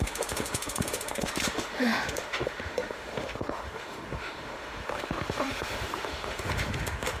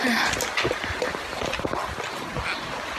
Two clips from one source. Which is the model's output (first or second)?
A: first